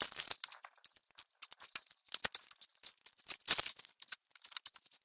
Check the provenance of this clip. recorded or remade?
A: recorded